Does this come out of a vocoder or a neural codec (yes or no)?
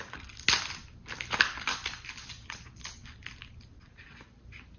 no